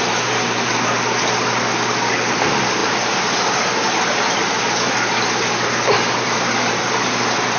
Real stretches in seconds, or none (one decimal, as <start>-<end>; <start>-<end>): 0.0-7.6